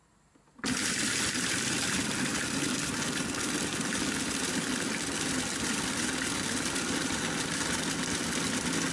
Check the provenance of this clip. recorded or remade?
recorded